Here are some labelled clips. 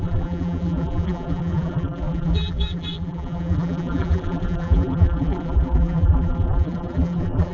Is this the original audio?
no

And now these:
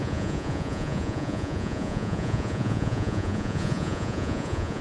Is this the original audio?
no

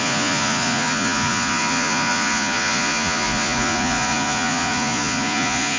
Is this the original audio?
no